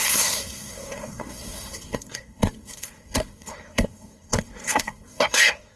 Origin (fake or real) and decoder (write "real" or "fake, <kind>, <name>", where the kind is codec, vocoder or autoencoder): fake, codec, SNAC